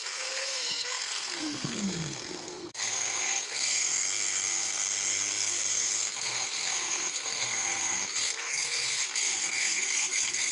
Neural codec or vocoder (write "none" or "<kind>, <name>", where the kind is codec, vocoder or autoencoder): codec, SNAC